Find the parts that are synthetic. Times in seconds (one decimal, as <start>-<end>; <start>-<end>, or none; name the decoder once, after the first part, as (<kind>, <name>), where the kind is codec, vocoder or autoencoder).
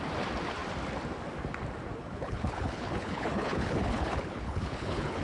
2.0-5.2 (codec, HILCodec)